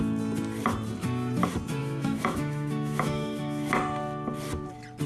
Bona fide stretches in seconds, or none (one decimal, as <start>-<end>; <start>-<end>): 0.0-1.8; 3.7-5.1